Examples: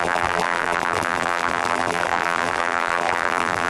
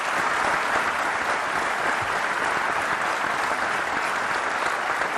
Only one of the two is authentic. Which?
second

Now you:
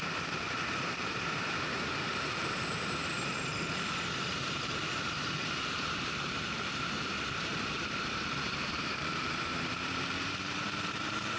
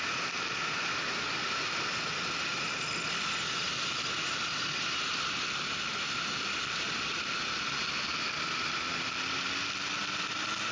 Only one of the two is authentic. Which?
second